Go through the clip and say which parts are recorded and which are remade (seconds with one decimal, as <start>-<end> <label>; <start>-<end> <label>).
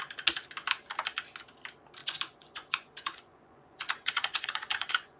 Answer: 0.0-2.0 recorded; 2.0-5.2 remade